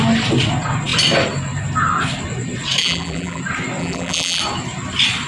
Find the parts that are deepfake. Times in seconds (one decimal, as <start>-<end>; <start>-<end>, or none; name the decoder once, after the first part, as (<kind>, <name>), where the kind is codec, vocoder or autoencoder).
2.8-3.4 (vocoder, BigVGAN v2); 3.8-4.4